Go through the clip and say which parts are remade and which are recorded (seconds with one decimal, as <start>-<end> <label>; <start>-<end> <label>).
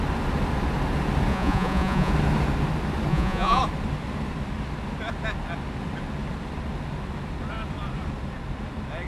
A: 0.0-1.3 recorded; 1.3-2.1 remade; 2.1-3.1 recorded; 3.1-3.6 remade; 3.6-9.1 recorded